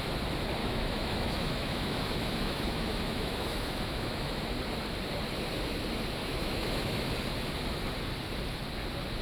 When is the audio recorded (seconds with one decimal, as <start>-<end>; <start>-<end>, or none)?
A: 0.0-0.6; 4.4-6.2; 7.1-9.2